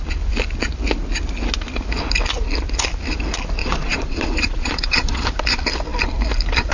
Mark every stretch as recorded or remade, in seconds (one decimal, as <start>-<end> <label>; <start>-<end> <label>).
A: 0.0-3.6 recorded; 3.6-5.2 remade; 5.2-6.7 recorded